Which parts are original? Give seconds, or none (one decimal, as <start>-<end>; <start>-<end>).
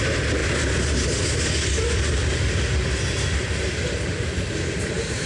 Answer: 0.0-5.3